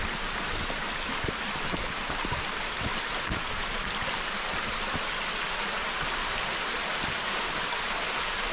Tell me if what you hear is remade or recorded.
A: recorded